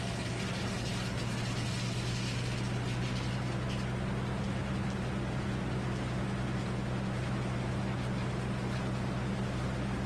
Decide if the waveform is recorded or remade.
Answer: recorded